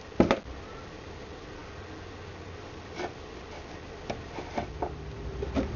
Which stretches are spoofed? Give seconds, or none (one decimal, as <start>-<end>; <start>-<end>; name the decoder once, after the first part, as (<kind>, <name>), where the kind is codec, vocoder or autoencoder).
none